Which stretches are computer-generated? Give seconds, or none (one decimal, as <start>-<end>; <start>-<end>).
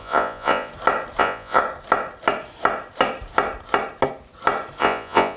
0.0-0.7; 1.2-1.6; 4.8-5.4